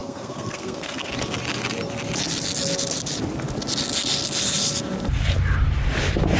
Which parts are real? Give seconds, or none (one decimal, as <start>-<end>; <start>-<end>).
1.1-6.4